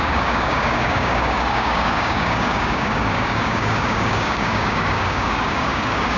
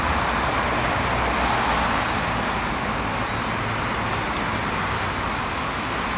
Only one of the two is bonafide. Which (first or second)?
second